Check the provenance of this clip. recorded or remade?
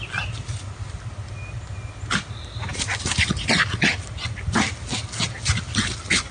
recorded